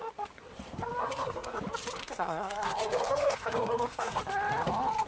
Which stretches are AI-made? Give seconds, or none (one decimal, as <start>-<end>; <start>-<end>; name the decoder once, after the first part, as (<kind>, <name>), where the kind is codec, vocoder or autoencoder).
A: 1.0-1.6 (codec, SNAC); 2.0-4.2